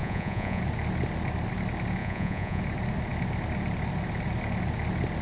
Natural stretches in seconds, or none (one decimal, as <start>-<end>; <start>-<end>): 0.6-2.0; 2.6-5.2